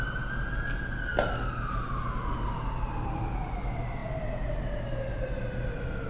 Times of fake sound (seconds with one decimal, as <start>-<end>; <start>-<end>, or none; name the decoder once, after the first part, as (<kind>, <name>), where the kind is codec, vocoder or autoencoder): none